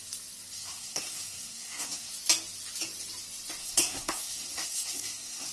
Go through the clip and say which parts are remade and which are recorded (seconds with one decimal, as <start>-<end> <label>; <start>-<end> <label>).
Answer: 0.0-0.5 recorded; 0.5-2.1 remade; 2.1-3.6 recorded; 3.6-5.5 remade